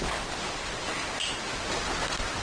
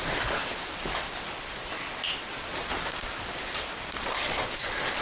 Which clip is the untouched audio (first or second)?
first